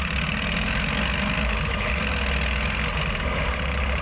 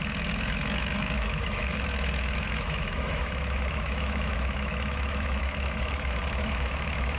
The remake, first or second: second